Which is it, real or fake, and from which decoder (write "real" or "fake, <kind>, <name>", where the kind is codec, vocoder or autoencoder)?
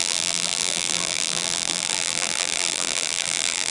fake, vocoder, BigVGAN v2